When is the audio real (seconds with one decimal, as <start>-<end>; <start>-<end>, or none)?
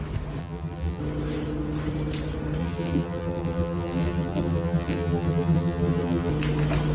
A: 0.0-0.4; 1.0-2.6; 6.3-6.9